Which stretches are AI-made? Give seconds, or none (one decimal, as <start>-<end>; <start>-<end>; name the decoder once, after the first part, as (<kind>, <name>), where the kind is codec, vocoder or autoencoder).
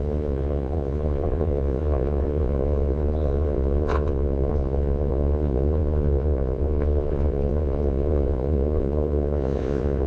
0.0-10.1 (vocoder, Vocos)